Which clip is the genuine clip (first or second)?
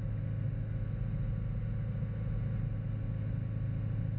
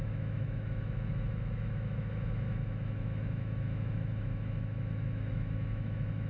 first